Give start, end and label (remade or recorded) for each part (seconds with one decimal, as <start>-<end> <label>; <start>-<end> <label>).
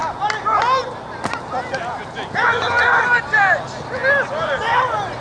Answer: 0.0-2.8 recorded; 2.8-3.6 remade; 3.6-5.2 recorded